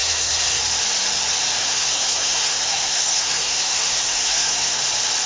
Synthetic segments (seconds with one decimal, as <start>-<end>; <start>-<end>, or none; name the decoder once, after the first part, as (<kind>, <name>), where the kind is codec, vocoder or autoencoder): 0.0-0.6 (codec, SNAC); 1.6-4.8